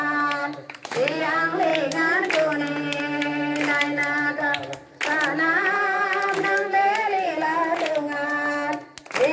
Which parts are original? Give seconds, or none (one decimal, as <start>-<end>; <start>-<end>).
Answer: 0.0-0.4; 1.2-9.3